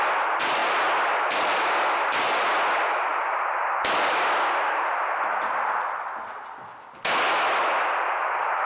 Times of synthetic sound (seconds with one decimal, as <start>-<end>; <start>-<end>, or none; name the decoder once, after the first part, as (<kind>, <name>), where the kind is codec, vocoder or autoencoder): none